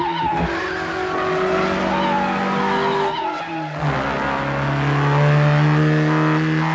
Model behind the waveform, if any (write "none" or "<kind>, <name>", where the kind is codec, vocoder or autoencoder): none